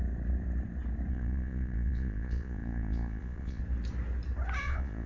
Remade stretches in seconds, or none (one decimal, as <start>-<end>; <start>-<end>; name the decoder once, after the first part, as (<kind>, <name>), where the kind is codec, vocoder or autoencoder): 1.1-3.6 (vocoder, Vocos); 4.6-5.1